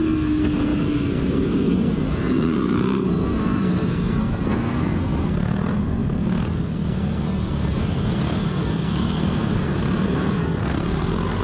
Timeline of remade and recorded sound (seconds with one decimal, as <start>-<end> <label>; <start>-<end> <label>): 0.0-11.4 remade